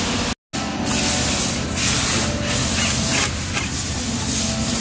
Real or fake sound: real